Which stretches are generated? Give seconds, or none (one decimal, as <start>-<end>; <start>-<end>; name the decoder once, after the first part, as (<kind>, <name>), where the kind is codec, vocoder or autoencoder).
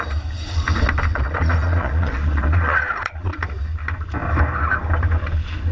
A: 1.1-3.4 (vocoder, Vocos)